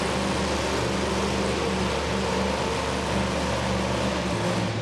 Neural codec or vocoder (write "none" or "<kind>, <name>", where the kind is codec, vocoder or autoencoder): none